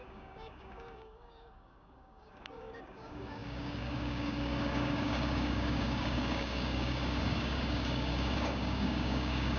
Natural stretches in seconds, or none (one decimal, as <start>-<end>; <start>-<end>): none

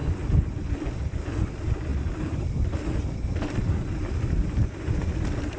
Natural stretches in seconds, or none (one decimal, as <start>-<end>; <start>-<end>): 0.0-5.6

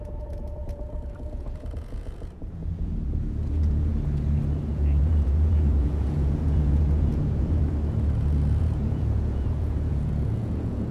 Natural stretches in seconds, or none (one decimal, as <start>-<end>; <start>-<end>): 3.9-4.7; 7.6-8.6

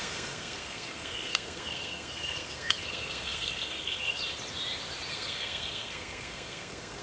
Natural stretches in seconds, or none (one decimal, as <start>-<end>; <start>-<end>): 4.2-5.1

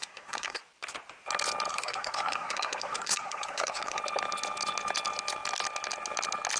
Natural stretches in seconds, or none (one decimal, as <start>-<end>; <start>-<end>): 0.6-1.7; 4.0-6.6